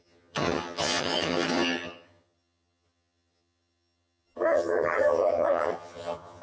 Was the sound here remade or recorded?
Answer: remade